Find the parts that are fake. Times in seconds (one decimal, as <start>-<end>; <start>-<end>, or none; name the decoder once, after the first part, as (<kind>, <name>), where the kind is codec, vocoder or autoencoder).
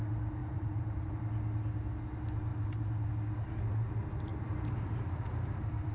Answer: 0.4-1.1 (vocoder, BigVGAN v2); 2.5-3.1; 4.3-5.9